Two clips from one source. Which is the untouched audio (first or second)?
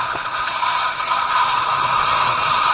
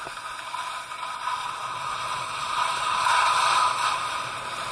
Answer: second